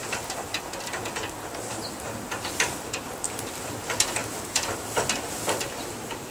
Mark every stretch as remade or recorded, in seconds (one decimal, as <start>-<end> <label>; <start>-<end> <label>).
0.0-6.3 recorded